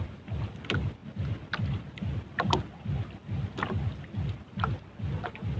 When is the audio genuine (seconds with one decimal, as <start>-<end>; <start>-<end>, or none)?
0.0-5.6